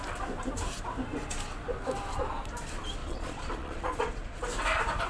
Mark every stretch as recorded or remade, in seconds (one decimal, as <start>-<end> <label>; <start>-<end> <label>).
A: 0.0-3.0 recorded; 3.0-4.4 remade; 4.4-5.1 recorded